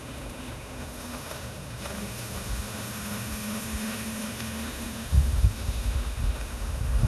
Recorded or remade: remade